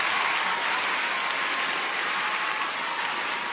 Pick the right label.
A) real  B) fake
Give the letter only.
A